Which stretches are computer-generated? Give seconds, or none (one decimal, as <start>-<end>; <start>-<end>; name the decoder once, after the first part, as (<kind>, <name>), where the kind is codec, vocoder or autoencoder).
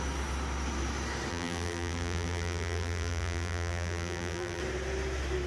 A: 1.3-4.6 (vocoder, BigVGAN v2)